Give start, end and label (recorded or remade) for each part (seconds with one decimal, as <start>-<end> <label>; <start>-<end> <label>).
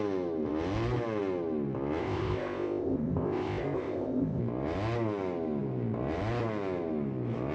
0.0-2.0 recorded; 2.0-4.4 remade; 4.4-7.5 recorded